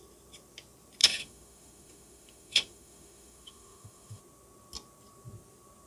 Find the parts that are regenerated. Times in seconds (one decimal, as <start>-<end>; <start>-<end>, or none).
1.0-4.2